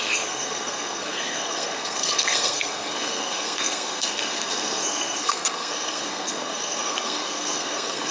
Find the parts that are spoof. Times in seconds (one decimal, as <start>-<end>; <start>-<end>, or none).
0.0-8.1